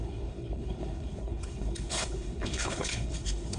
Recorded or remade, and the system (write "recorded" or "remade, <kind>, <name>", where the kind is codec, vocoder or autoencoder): remade, codec, HILCodec